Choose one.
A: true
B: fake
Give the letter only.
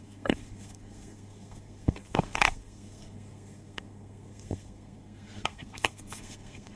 B